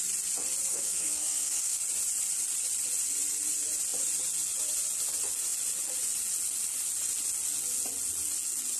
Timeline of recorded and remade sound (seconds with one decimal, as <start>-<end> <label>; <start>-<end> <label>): 0.0-0.7 recorded; 0.7-1.8 remade; 1.8-8.8 recorded